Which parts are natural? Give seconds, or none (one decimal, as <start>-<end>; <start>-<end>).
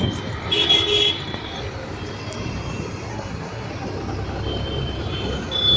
0.0-3.1; 3.7-5.8